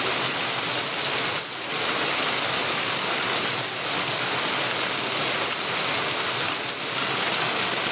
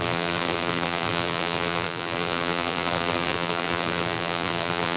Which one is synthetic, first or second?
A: second